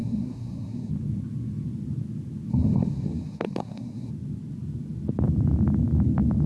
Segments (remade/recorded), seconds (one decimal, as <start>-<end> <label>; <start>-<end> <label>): 0.0-0.9 remade; 0.9-2.5 recorded; 2.5-4.1 remade; 4.1-6.5 recorded